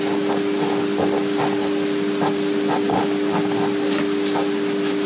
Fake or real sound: real